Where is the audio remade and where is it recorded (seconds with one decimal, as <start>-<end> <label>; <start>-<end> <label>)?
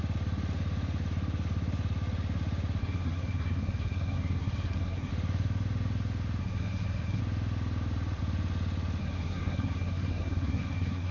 0.0-2.8 recorded; 2.8-5.1 remade; 5.1-6.4 recorded; 6.4-7.2 remade; 7.2-9.0 recorded; 9.0-11.1 remade